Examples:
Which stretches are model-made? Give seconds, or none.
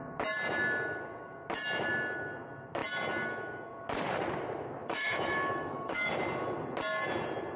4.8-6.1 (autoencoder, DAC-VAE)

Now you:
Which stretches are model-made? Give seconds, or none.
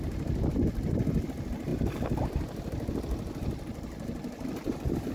none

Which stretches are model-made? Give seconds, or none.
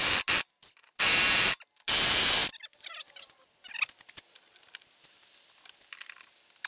none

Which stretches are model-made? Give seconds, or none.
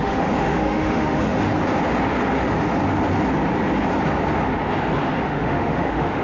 0.0-1.5 (autoencoder, DAC-VAE); 5.2-6.2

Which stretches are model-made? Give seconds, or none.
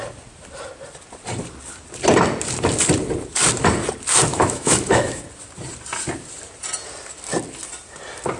4.3-5.2 (autoencoder, DAC-VAE)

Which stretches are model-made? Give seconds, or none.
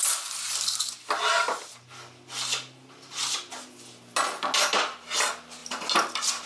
none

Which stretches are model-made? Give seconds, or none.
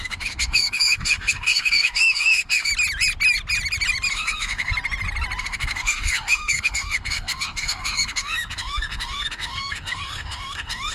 0.0-2.7 (autoencoder, DAC-VAE); 4.1-4.7; 5.4-10.9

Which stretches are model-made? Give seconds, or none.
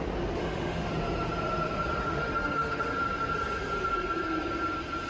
0.4-0.9 (autoencoder, DAC-VAE); 2.0-2.9